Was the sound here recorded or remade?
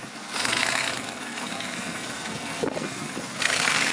remade